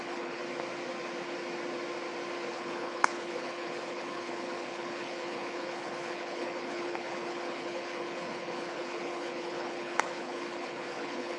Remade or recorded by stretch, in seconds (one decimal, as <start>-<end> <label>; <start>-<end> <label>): 0.0-0.4 remade; 0.4-2.5 recorded; 2.5-11.4 remade